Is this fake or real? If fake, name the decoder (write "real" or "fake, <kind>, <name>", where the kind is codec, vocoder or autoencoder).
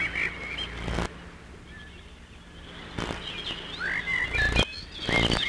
real